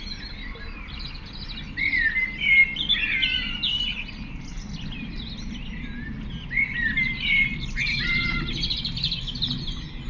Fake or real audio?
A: real